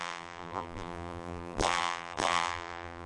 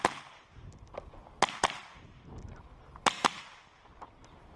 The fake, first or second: first